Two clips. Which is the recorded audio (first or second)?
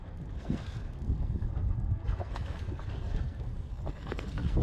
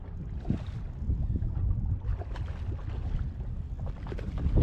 second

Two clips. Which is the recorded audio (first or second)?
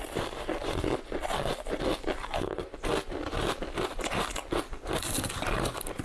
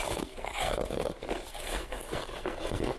first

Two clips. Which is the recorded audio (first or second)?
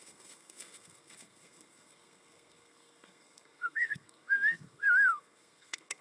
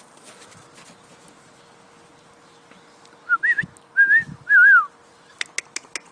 second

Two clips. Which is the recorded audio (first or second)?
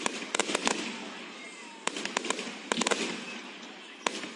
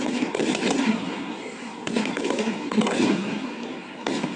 first